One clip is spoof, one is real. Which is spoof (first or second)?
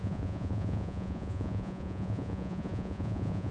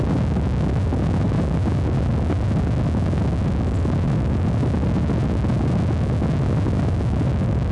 first